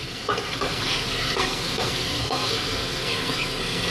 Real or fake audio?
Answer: fake